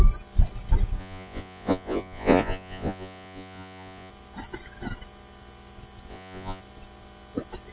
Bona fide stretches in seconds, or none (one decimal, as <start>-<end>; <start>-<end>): 0.0-1.0; 4.1-6.1; 6.6-7.7

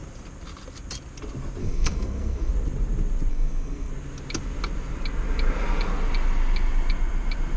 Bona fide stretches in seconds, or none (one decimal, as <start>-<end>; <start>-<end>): 0.0-1.6; 2.5-3.3; 3.9-7.6

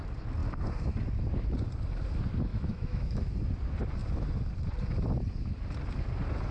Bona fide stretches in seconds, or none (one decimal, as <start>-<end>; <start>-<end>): 0.0-2.5; 3.2-6.5

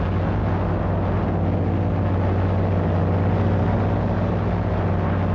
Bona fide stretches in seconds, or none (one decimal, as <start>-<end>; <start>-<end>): 0.0-5.3

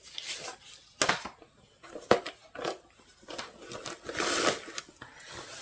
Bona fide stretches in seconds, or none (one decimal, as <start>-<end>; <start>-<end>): 0.0-5.6

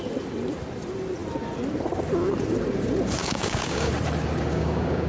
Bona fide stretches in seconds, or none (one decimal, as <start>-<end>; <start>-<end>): 0.0-3.2; 3.9-4.5

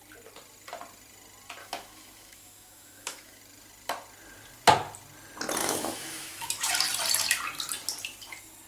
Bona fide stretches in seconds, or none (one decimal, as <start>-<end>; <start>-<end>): 0.0-1.6; 3.4-5.6; 6.7-8.7